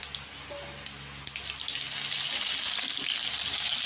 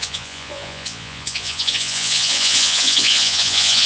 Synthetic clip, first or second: second